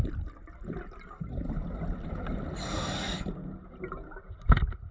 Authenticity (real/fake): real